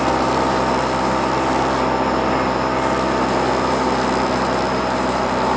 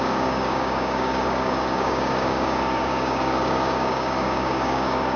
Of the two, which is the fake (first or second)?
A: second